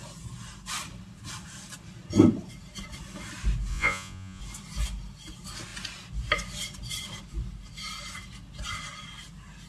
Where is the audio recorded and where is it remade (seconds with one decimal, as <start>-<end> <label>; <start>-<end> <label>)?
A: 0.0-3.7 recorded; 3.7-4.4 remade; 4.4-9.7 recorded